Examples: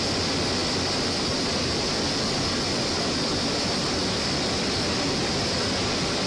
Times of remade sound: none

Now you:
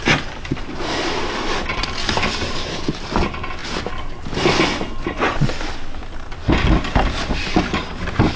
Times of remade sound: none

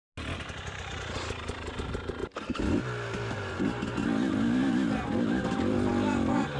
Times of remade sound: 2.2-3.6 (vocoder, BigVGAN v2)

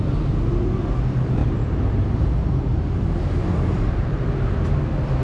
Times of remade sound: 1.4-4.5 (vocoder, BigVGAN v2)

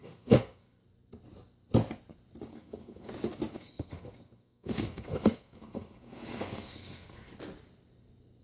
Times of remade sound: 0.0-0.8 (codec, SNAC); 2.5-3.1; 3.5-7.3